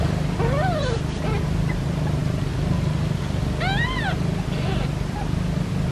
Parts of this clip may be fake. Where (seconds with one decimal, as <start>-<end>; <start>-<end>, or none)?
none